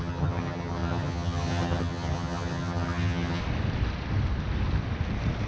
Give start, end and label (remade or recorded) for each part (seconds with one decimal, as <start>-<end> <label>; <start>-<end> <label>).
0.0-3.4 remade; 3.4-5.5 recorded